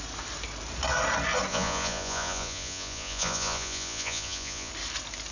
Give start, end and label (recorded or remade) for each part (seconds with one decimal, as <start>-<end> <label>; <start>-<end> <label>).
0.0-1.5 recorded; 1.5-4.7 remade; 4.7-5.3 recorded